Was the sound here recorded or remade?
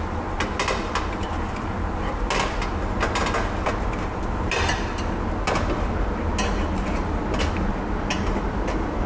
recorded